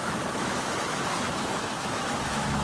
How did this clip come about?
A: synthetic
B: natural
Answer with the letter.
A